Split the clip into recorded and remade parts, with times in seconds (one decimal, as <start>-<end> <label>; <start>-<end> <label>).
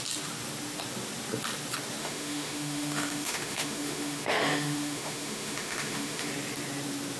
0.0-2.0 recorded; 2.0-6.3 remade; 6.3-7.2 recorded